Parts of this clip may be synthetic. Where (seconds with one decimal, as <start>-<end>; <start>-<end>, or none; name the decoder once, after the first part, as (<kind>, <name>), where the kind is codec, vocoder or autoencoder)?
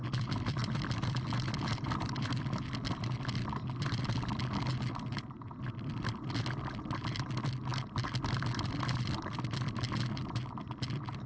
0.0-11.3 (vocoder, BigVGAN v2)